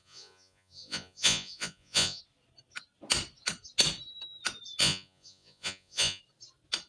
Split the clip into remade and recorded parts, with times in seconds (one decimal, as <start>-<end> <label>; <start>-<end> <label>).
0.0-2.2 remade; 2.2-4.8 recorded; 4.8-6.2 remade; 6.2-6.9 recorded